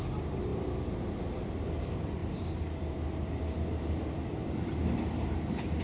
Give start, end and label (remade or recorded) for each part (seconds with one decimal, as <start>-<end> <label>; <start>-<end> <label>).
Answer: 0.0-5.8 recorded